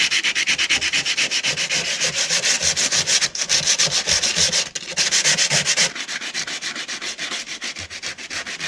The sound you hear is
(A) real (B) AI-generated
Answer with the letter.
A